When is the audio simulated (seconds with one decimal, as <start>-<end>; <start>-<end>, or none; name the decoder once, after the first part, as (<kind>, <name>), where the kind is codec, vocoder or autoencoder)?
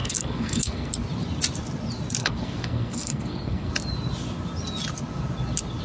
0.0-0.9 (codec, SNAC); 2.2-3.7